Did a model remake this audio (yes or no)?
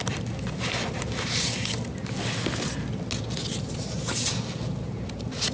no